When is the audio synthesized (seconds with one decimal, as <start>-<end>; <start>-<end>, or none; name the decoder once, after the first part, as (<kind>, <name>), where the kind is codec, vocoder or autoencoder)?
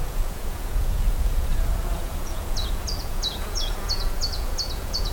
0.0-5.1 (vocoder, Vocos)